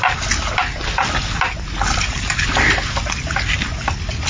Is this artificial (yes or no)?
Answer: no